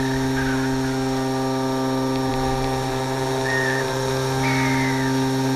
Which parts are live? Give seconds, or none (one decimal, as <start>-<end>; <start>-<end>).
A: 0.0-2.3; 4.1-5.6